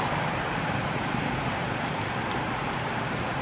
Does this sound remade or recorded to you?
recorded